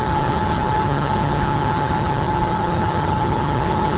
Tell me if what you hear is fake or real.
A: fake